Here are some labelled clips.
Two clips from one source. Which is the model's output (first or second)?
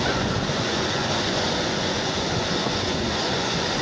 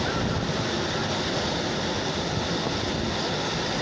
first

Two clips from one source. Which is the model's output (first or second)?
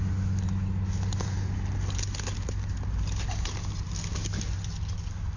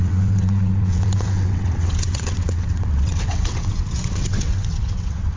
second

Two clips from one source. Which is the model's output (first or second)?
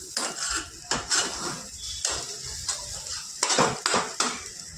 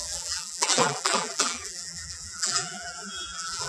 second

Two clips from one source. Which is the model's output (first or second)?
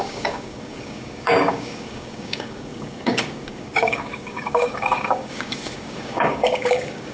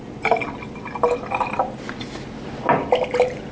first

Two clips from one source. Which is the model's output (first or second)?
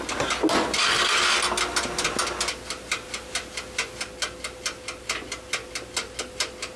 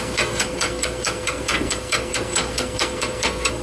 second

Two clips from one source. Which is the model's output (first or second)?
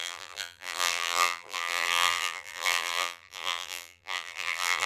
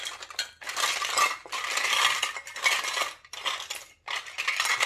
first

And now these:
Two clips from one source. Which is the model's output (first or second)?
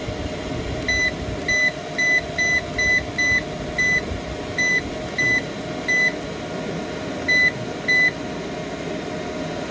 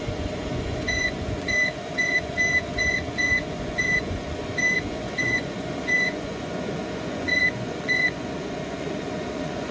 second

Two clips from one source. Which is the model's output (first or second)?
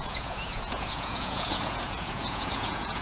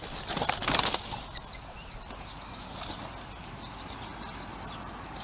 first